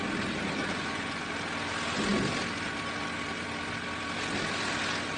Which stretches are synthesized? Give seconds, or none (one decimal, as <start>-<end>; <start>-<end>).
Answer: 0.6-1.3